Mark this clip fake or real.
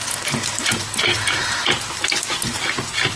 real